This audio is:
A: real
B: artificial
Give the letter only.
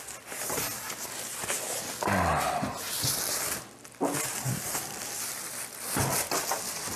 A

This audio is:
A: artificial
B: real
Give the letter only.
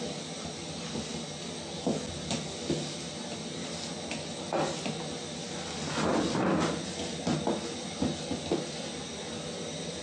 B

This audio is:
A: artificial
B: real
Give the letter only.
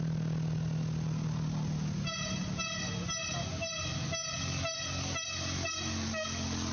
B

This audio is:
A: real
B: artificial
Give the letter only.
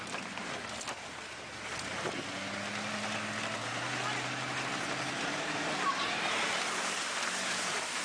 A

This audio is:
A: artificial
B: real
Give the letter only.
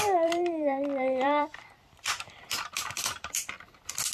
A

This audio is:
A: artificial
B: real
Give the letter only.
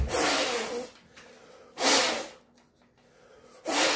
B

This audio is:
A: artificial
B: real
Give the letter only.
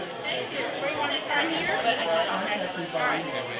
B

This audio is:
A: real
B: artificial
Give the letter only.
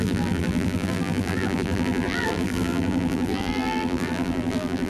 B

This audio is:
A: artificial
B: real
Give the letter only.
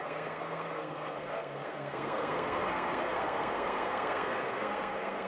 A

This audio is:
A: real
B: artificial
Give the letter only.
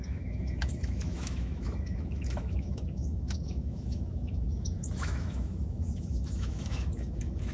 B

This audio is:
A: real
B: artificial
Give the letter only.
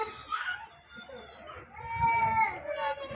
A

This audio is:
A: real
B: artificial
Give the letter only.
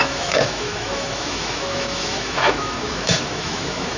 B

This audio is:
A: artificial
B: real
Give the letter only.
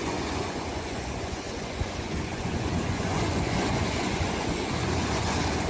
A